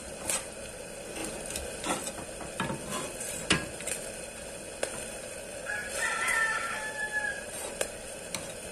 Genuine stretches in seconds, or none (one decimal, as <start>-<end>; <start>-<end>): 0.0-5.8; 7.9-8.7